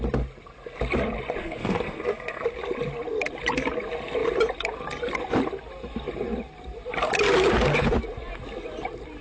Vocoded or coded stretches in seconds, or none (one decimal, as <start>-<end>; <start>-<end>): 1.4-2.4